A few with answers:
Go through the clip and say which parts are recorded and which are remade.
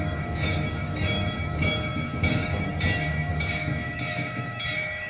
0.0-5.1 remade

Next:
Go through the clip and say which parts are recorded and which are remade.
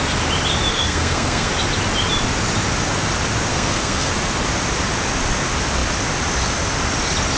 0.0-0.7 recorded; 0.7-1.5 remade; 1.5-3.5 recorded; 3.5-4.1 remade; 4.1-7.4 recorded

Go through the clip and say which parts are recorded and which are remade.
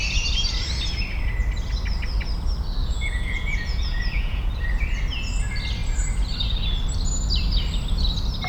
0.0-2.8 recorded; 2.8-4.5 remade; 4.5-8.5 recorded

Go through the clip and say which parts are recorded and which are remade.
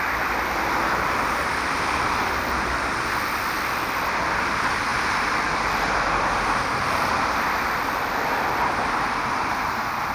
0.0-10.1 remade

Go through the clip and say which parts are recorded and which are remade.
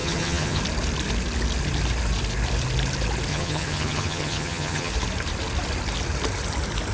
0.0-0.6 remade; 0.6-3.3 recorded; 3.3-4.9 remade; 4.9-6.9 recorded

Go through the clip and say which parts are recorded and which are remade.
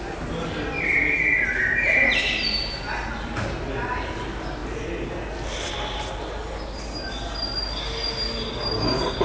0.0-9.2 recorded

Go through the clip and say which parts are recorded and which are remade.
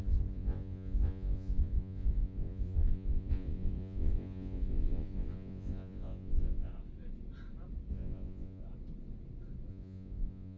0.0-6.7 remade; 6.7-7.9 recorded; 7.9-8.6 remade; 8.6-9.7 recorded; 9.7-10.6 remade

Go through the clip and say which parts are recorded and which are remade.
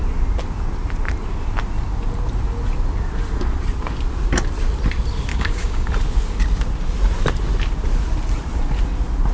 0.0-5.3 recorded; 5.3-5.9 remade; 5.9-9.3 recorded